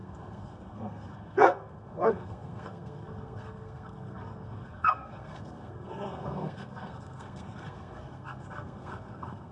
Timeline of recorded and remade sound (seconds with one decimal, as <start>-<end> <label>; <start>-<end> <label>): 0.0-9.5 remade